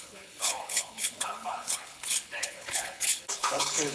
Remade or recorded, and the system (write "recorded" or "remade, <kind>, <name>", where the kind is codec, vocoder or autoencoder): remade, codec, HILCodec